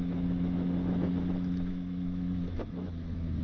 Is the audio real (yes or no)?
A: no